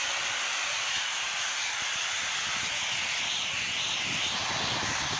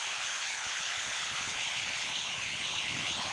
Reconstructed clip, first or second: second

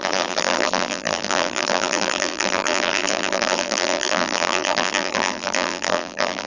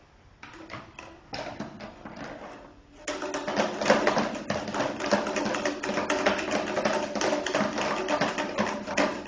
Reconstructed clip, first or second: first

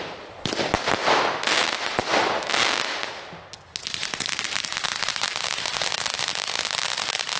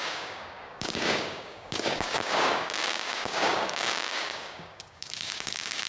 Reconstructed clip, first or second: second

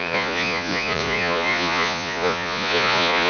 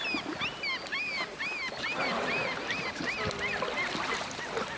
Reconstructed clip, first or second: first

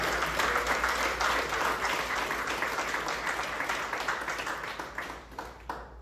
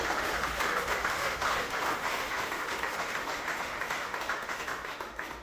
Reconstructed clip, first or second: second